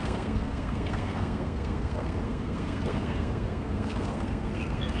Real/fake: fake